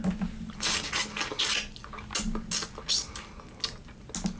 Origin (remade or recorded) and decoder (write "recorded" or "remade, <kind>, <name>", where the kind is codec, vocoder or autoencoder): recorded